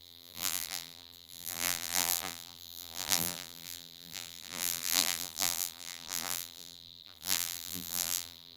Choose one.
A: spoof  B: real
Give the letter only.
A